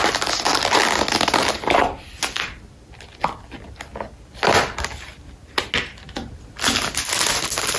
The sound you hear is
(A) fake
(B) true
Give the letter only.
B